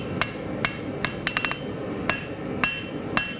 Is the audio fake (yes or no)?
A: no